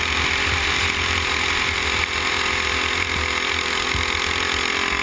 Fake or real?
real